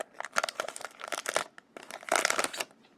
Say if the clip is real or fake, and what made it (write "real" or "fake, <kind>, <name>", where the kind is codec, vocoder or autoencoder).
real